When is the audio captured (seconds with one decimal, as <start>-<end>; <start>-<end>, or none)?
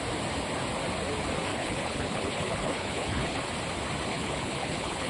0.0-1.5; 3.4-4.1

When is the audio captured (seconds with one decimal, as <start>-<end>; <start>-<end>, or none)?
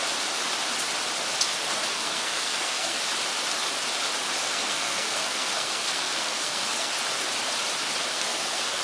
0.0-1.9; 3.0-4.4; 6.9-8.1